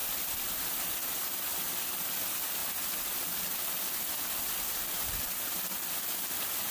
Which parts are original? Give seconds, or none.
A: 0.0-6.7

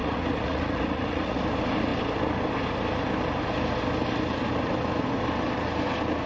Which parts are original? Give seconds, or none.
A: 1.4-6.3

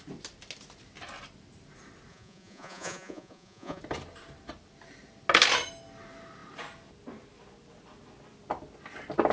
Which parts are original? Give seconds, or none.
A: 0.0-2.1; 3.8-9.3

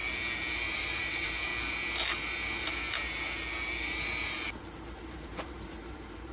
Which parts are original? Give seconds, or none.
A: 0.0-0.8; 1.5-4.6

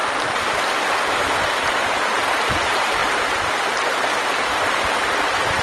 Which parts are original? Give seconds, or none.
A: 0.0-1.5; 3.0-3.9

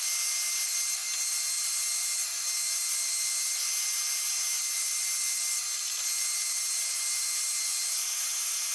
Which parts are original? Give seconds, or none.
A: 0.0-8.7

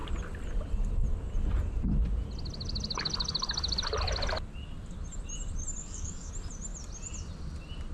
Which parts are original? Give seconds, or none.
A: 0.0-5.8; 6.3-7.9

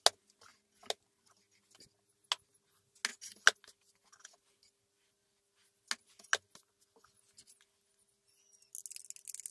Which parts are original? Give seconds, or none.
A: 0.0-9.5